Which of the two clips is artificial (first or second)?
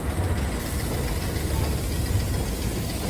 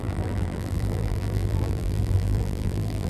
second